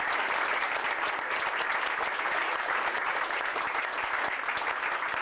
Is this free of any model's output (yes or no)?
yes